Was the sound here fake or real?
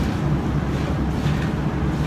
real